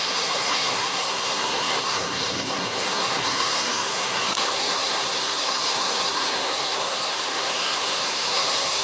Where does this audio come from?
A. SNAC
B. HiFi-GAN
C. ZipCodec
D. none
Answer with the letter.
A